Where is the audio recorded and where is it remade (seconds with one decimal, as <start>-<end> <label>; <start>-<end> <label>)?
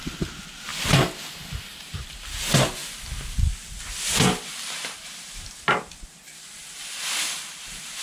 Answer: 0.0-8.0 recorded